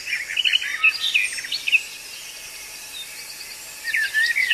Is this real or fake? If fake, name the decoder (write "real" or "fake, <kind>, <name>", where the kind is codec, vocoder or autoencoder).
real